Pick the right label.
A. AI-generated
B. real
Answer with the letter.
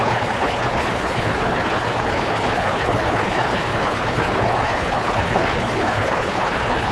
A